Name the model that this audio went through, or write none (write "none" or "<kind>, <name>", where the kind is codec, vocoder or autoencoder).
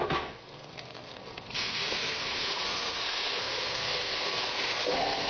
codec, SNAC